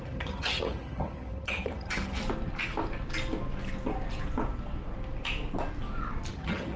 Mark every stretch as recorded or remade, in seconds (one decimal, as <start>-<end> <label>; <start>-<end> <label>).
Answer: 0.0-2.2 remade; 2.2-6.3 recorded; 6.3-6.8 remade